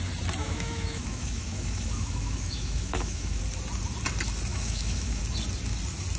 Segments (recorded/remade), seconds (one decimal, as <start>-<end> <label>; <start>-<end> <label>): 0.0-0.4 recorded; 0.4-3.4 remade; 3.4-4.5 recorded; 4.5-5.2 remade; 5.2-6.2 recorded